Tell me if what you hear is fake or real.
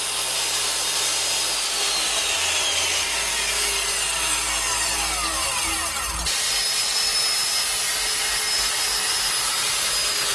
real